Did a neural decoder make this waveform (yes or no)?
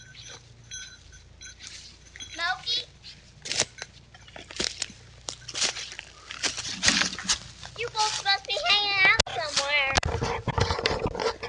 no